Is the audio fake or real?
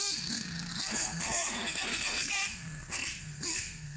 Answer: fake